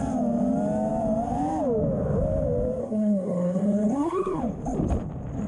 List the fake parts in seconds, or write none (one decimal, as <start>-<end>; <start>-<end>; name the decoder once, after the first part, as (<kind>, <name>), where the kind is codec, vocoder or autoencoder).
2.8-4.4 (codec, SNAC)